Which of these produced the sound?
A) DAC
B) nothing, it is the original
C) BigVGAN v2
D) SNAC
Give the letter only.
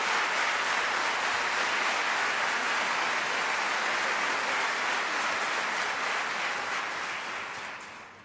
B